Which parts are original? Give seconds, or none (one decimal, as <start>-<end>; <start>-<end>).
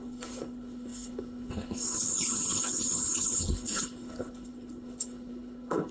none